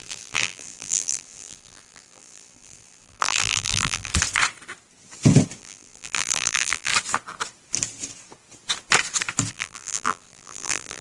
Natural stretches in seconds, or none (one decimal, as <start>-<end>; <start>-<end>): 4.1-5.6; 6.9-9.5